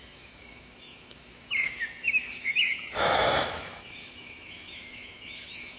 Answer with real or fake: fake